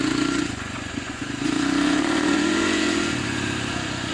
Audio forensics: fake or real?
fake